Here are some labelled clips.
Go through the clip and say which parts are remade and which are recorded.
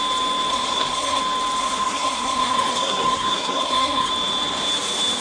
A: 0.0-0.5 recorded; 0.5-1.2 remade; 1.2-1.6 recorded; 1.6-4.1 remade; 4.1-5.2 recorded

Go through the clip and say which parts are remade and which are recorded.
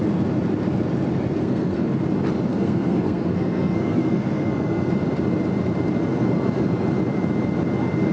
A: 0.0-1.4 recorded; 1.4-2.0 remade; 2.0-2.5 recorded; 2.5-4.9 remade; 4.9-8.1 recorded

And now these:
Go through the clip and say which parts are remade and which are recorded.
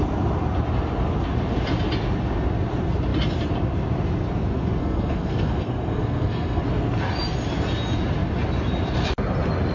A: 0.0-4.8 recorded; 4.8-6.6 remade; 6.6-9.7 recorded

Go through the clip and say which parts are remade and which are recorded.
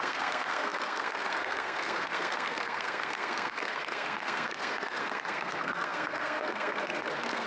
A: 0.0-7.5 remade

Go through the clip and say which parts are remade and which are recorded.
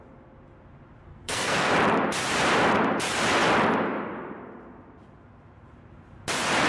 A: 0.0-1.1 recorded; 1.1-1.7 remade; 1.7-6.7 recorded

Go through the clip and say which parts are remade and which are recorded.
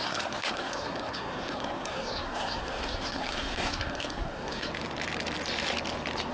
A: 0.0-4.7 remade; 4.7-6.3 recorded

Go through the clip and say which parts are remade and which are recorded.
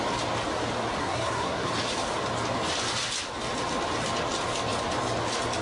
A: 0.0-1.0 recorded; 1.0-1.7 remade; 1.7-5.6 recorded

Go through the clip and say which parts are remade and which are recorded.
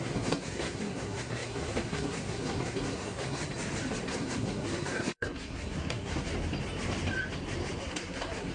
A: 0.0-3.4 remade; 3.4-4.1 recorded; 4.1-6.3 remade; 6.3-7.8 recorded; 7.8-8.5 remade